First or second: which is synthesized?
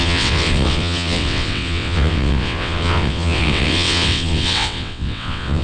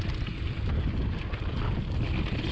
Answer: first